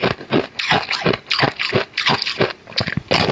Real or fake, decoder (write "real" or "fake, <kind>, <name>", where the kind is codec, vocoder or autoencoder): real